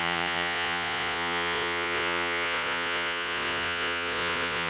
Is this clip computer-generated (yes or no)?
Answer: yes